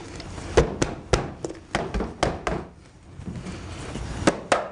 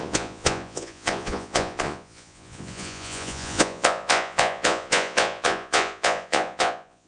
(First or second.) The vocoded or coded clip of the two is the second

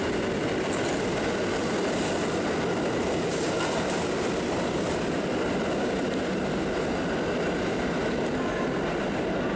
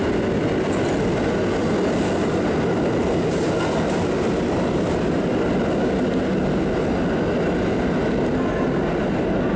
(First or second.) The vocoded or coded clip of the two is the first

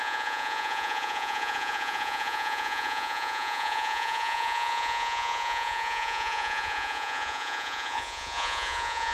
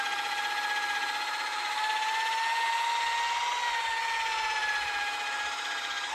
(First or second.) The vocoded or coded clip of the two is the first